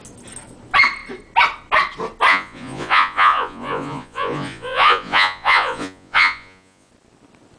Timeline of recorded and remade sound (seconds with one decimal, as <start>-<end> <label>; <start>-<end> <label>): 0.0-2.3 recorded; 2.3-6.9 remade; 6.9-7.6 recorded